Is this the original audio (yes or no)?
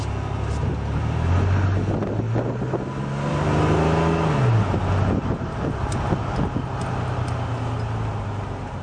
yes